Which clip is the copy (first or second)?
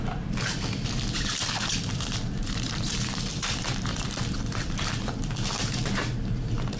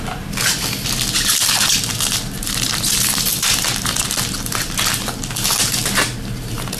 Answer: first